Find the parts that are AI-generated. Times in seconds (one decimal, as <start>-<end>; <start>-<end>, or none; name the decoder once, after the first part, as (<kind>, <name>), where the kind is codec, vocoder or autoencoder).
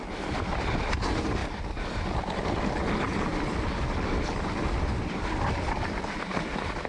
3.3-6.2 (vocoder, BigVGAN v2)